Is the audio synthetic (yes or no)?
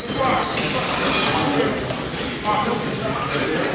no